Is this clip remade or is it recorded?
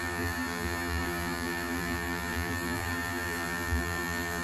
remade